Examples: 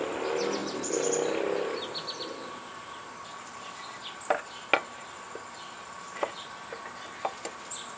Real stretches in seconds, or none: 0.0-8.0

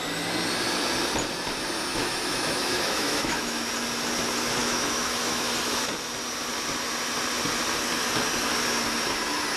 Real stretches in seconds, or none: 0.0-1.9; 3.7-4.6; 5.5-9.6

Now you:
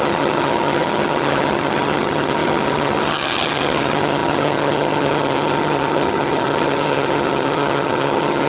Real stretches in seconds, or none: none

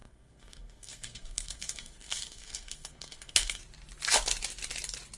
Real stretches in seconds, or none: 3.6-5.2

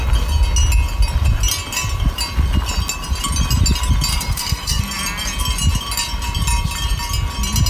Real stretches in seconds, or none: 0.0-4.1; 4.8-7.7

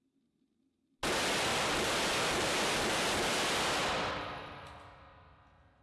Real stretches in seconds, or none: 0.0-5.8

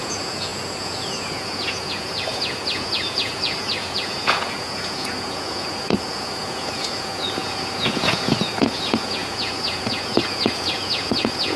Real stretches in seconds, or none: none